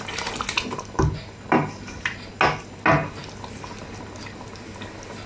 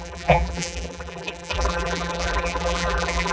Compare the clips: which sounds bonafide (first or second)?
first